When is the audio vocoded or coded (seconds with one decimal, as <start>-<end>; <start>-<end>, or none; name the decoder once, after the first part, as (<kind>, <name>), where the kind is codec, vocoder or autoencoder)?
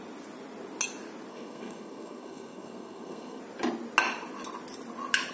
1.3-3.4 (codec, SNAC)